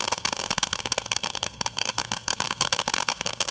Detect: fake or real fake